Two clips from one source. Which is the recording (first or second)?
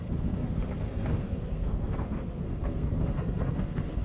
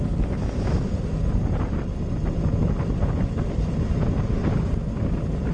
second